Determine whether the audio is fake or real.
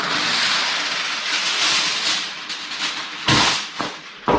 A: real